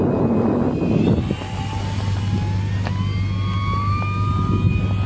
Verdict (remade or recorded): recorded